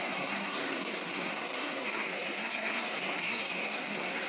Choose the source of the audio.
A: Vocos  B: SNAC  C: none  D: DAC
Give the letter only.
B